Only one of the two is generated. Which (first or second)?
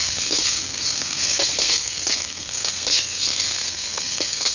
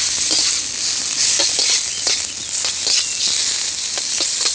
first